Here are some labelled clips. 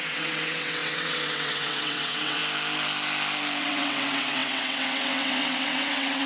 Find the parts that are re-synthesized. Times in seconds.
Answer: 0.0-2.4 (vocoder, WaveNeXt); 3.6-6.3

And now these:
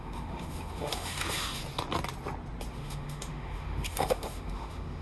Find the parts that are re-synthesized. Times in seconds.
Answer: 0.0-1.6 (autoencoder, DAC-VAE); 2.7-5.0

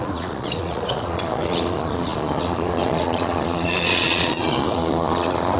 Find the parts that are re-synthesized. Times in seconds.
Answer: 0.0-5.6 (vocoder, Vocos)

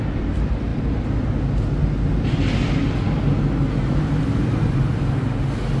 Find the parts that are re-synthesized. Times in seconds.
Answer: none

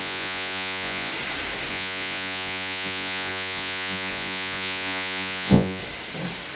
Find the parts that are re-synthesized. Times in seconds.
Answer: 0.0-1.1 (vocoder, Vocos); 1.7-5.8